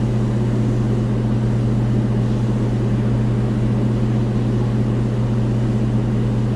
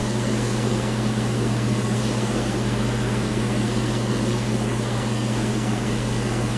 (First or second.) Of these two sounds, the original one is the first